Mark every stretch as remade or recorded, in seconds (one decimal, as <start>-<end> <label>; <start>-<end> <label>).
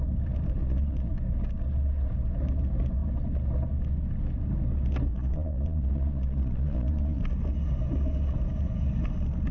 0.0-0.6 recorded; 0.6-1.1 remade; 1.1-5.1 recorded; 5.1-7.2 remade; 7.2-9.5 recorded